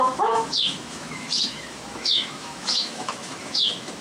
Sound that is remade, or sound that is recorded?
remade